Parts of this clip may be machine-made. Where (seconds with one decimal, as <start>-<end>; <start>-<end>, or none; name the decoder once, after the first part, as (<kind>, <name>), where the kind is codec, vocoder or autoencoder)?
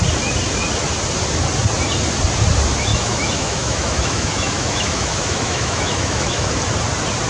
2.9-6.5 (autoencoder, DAC-VAE)